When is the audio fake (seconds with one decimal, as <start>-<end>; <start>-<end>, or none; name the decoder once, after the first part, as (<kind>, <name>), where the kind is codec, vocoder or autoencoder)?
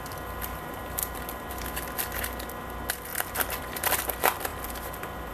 1.0-1.5 (vocoder, BigVGAN v2)